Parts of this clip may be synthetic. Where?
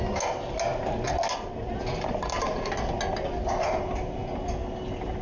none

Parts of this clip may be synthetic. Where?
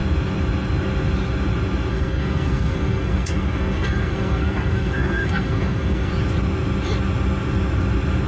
1.9-6.1 (codec, SNAC)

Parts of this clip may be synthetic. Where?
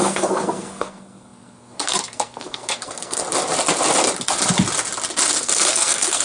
0.0-3.2 (codec, SNAC); 5.4-6.2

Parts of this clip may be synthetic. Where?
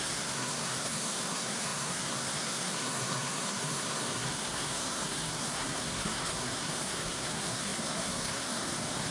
0.0-9.1 (codec, SNAC)